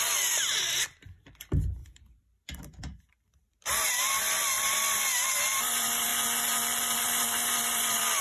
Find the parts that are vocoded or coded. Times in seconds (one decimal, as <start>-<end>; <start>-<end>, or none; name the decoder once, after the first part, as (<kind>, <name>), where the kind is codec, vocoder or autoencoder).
0.0-6.1 (vocoder, BigVGAN v2); 7.0-8.2